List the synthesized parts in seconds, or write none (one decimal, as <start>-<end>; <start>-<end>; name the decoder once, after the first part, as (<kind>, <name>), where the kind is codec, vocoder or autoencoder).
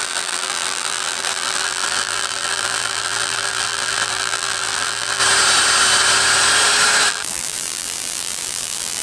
0.0-5.2 (vocoder, BigVGAN v2); 7.1-9.0